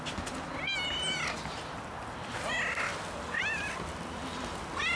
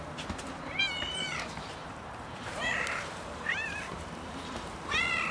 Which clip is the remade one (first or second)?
second